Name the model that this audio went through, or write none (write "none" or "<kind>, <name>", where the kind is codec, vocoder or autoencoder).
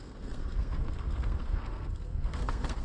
codec, SNAC